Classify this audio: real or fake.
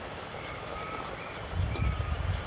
real